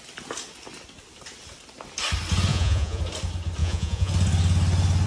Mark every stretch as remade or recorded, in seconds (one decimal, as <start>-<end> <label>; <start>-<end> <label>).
0.0-2.5 recorded; 2.5-3.0 remade; 3.0-3.6 recorded; 3.6-4.1 remade; 4.1-5.1 recorded